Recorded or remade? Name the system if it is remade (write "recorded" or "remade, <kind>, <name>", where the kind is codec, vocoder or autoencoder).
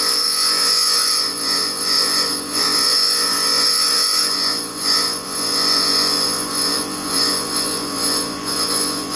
remade, vocoder, Vocos